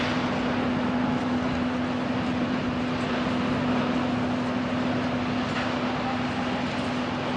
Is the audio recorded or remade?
recorded